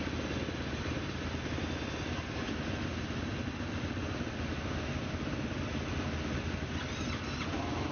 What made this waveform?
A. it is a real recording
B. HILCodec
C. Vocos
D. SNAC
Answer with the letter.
A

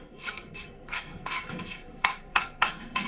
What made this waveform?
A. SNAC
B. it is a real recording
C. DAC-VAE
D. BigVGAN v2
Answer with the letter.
A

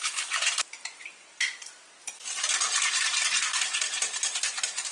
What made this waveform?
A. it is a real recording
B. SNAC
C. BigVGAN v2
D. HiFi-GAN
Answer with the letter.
A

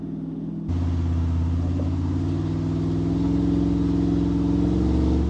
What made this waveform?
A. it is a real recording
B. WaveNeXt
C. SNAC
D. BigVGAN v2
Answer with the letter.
A